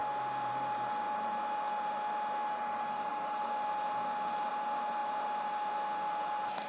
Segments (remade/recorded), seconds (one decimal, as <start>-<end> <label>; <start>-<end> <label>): 0.0-6.7 recorded

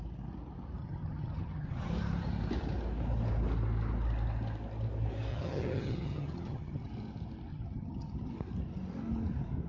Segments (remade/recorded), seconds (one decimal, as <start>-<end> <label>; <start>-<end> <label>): 0.0-0.8 recorded; 0.8-1.9 remade; 1.9-5.3 recorded; 5.3-6.9 remade; 6.9-7.5 recorded; 7.5-8.3 remade; 8.3-9.7 recorded

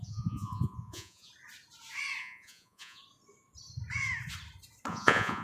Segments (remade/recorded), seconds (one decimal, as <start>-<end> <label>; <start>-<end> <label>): 0.0-1.3 remade; 1.3-2.2 recorded; 2.2-3.0 remade; 3.0-4.9 recorded; 4.9-5.4 remade

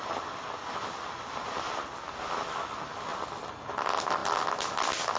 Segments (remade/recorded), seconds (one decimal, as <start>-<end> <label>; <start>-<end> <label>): 0.0-5.2 recorded

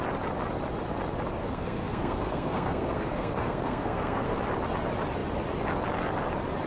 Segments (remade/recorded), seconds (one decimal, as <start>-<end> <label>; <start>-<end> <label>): 0.0-1.4 recorded; 1.4-4.4 remade; 4.4-6.7 recorded

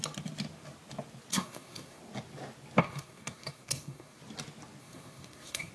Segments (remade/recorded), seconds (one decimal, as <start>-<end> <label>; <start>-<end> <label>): 0.0-1.3 recorded; 1.3-2.0 remade; 2.0-2.8 recorded; 2.8-4.2 remade; 4.2-4.8 recorded; 4.8-5.7 remade

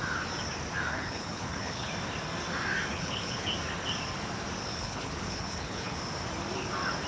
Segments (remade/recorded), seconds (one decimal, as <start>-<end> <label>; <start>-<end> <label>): 0.0-0.9 recorded; 0.9-1.9 remade; 1.9-2.9 recorded; 2.9-3.5 remade; 3.5-4.7 recorded; 4.7-6.0 remade; 6.0-7.1 recorded